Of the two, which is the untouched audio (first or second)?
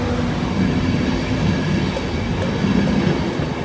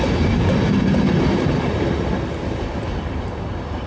first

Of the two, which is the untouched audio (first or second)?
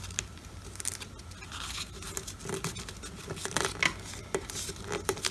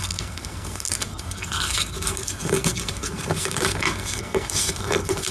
first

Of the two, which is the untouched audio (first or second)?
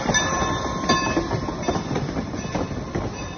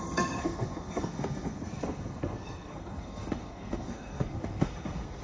first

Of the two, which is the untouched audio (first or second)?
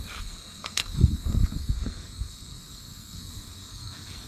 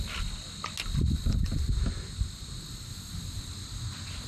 second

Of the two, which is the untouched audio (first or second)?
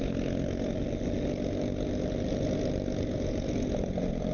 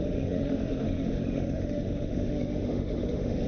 first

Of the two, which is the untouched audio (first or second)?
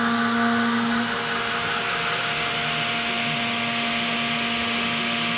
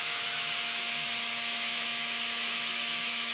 first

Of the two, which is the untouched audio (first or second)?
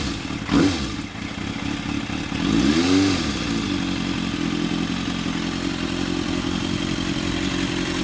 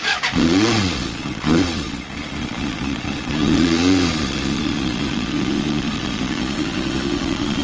first